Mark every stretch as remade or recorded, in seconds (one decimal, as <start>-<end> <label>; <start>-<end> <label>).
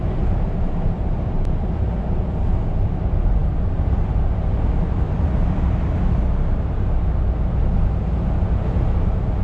0.0-9.4 recorded